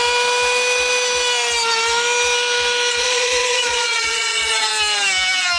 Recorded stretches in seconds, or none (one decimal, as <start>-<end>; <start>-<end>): 0.0-3.0; 4.7-5.6